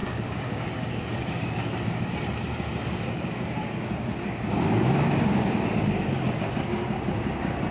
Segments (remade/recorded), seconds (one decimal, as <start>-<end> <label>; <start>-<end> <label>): 0.0-2.1 remade; 2.1-2.8 recorded; 2.8-7.7 remade